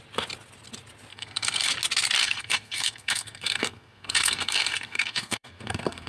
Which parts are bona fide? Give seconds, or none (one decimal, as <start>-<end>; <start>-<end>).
0.0-1.1; 1.7-2.2